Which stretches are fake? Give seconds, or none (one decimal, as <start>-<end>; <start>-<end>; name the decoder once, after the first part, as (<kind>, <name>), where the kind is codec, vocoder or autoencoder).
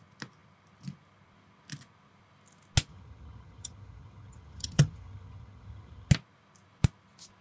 2.9-6.1 (vocoder, HiFi-GAN)